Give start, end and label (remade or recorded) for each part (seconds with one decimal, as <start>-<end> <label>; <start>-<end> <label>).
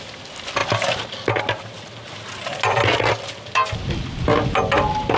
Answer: 0.0-5.2 recorded